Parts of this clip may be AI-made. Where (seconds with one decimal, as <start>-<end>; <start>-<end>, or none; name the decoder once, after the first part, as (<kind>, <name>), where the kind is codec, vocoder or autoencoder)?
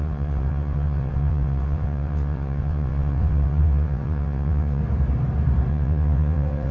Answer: 0.0-4.8 (vocoder, WaveNeXt); 5.7-6.7